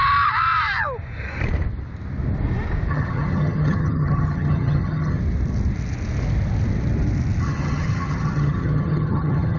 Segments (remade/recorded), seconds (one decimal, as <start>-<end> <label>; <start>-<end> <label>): 0.0-2.9 recorded; 2.9-5.2 remade; 5.2-7.4 recorded; 7.4-9.6 remade